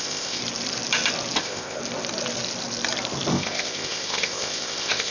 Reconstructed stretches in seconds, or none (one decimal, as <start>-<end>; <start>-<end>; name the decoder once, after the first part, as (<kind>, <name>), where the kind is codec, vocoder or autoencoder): 0.0-0.4 (codec, ZipCodec); 1.4-1.8; 3.3-5.1